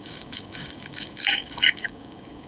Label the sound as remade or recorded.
remade